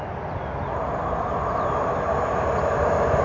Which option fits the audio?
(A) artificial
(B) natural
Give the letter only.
B